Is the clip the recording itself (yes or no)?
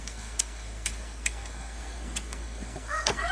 no